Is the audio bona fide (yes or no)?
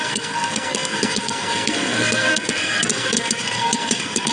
no